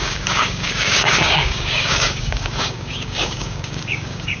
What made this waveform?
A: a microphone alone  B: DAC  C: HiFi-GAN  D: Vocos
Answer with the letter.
B